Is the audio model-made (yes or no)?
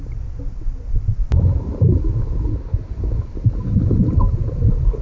no